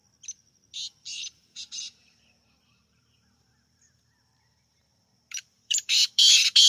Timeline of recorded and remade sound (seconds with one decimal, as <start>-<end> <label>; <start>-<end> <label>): 0.0-1.0 recorded; 1.0-6.7 remade